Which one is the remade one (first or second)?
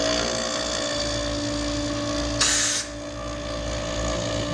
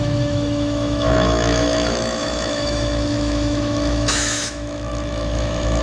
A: second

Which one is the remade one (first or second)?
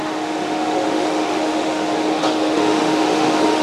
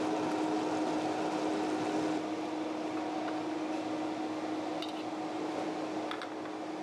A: first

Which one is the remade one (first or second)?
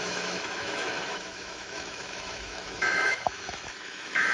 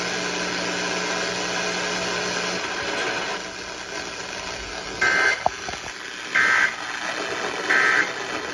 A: first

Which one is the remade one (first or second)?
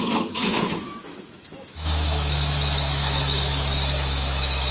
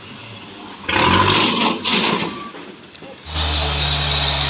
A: first